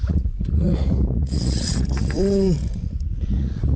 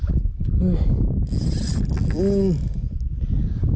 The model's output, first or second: first